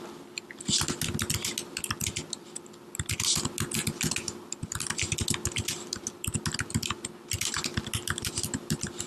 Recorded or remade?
recorded